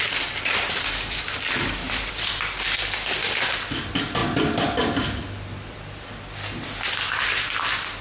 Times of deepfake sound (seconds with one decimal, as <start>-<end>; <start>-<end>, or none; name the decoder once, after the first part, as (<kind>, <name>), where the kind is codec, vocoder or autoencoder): 0.0-4.2 (vocoder, BigVGAN v2)

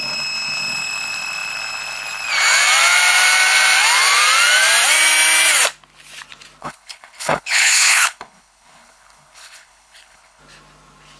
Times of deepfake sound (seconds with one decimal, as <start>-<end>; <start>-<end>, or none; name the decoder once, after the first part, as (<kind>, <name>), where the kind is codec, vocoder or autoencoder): 6.6-10.4 (codec, HILCodec)

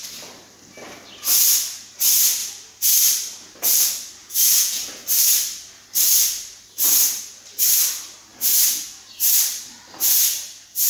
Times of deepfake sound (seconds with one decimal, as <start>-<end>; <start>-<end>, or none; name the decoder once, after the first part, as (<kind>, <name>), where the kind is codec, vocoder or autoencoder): 4.2-4.8 (vocoder, Vocos)